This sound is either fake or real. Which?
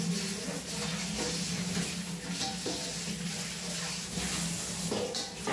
real